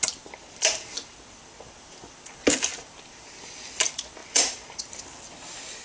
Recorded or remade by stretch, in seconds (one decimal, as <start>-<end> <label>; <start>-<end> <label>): 0.0-5.8 recorded